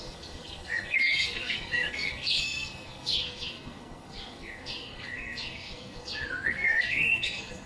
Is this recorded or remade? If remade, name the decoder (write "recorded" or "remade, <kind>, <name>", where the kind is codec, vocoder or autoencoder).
remade, codec, SNAC